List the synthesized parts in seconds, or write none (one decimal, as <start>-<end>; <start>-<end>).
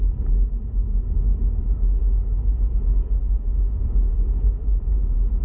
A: none